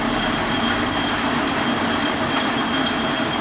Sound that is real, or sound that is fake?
fake